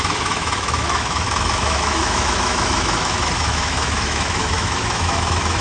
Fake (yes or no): yes